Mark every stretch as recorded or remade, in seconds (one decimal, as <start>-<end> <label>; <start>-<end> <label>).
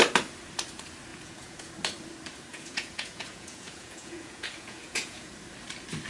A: 0.0-1.1 recorded; 1.1-1.7 remade; 1.7-2.5 recorded; 2.5-5.3 remade; 5.3-6.1 recorded